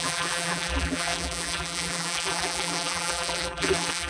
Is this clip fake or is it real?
fake